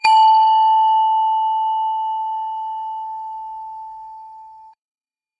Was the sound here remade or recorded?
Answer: remade